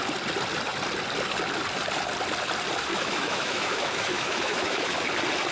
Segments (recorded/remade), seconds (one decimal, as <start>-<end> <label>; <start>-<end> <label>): 0.0-2.9 recorded; 2.9-5.1 remade; 5.1-5.5 recorded